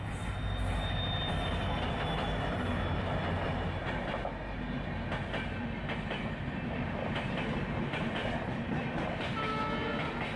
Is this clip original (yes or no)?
yes